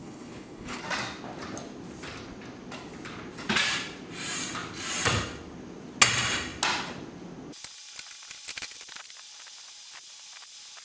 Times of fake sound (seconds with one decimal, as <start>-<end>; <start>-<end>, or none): 0.0-0.8